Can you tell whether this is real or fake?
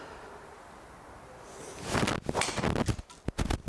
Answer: real